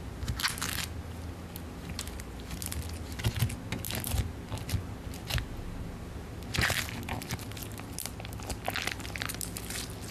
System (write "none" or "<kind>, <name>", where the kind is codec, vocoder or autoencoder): none